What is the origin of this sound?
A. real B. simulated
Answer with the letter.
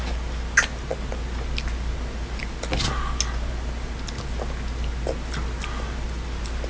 A